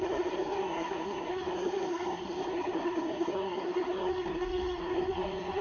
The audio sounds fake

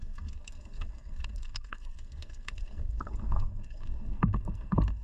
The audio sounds fake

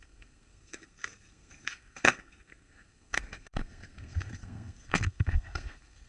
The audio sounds fake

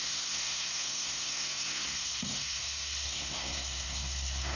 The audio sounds fake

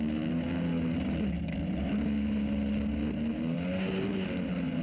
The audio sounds real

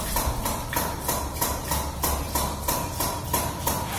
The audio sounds real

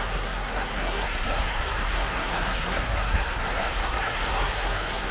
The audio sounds fake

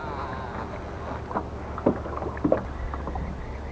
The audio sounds real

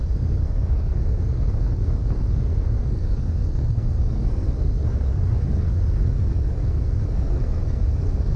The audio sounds fake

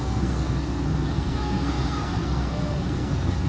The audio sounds fake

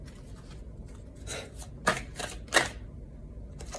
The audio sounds real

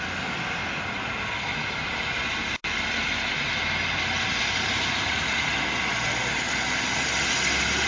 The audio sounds real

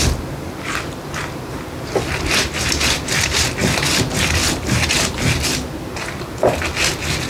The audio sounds real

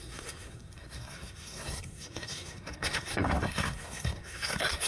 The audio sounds fake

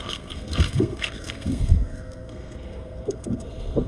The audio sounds fake